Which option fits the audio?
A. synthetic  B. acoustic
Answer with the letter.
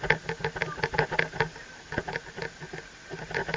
B